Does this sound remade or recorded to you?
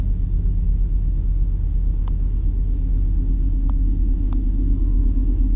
remade